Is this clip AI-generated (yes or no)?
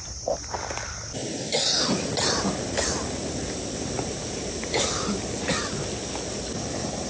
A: no